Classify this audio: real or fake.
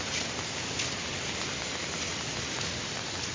real